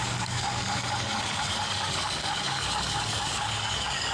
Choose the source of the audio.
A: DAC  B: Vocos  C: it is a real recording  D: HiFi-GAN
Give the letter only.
A